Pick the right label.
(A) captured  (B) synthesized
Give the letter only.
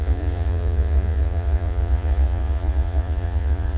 B